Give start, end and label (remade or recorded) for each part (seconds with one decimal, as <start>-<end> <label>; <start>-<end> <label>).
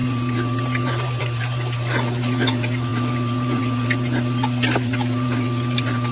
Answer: 0.0-6.1 remade